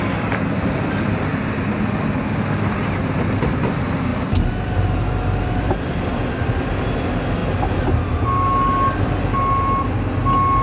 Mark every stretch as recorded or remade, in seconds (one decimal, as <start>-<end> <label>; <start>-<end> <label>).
0.0-1.3 remade; 1.3-2.8 recorded; 2.8-4.1 remade; 4.1-5.6 recorded; 5.6-7.4 remade; 7.4-10.6 recorded